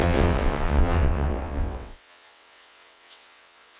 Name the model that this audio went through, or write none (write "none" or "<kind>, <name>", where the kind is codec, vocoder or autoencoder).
vocoder, WaveNeXt